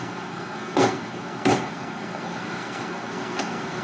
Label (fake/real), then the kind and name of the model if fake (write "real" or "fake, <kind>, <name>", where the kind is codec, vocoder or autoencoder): fake, codec, SNAC